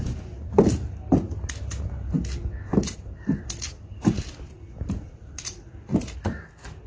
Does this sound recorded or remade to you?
recorded